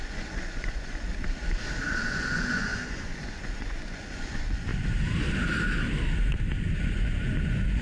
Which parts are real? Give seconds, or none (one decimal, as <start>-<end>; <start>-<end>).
1.1-2.1; 4.7-6.8